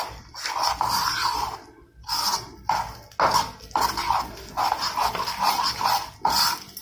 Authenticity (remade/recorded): recorded